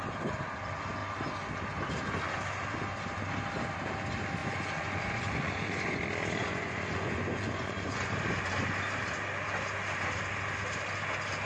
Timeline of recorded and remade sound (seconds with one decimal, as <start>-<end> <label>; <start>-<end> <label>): 0.0-4.4 recorded; 4.4-6.0 remade; 6.0-6.4 recorded; 6.4-8.1 remade; 8.1-11.5 recorded

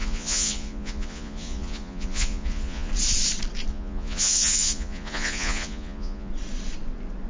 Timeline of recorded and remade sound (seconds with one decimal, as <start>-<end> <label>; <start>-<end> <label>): 0.0-2.9 remade; 2.9-3.7 recorded; 3.7-6.3 remade; 6.3-7.3 recorded

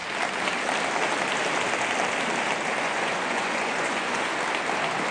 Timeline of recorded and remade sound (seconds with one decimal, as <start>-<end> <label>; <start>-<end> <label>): 0.0-2.8 recorded; 2.8-4.3 remade; 4.3-5.1 recorded

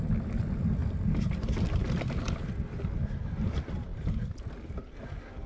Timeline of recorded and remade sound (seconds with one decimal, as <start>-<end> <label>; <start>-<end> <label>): 0.0-5.5 recorded